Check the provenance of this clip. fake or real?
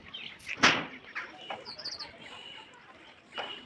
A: real